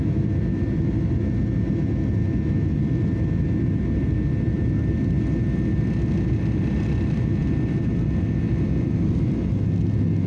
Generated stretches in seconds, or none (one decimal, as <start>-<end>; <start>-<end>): none